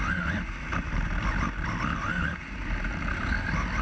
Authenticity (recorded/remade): recorded